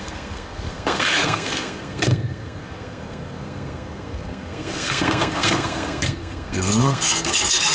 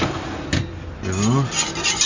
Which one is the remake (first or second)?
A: first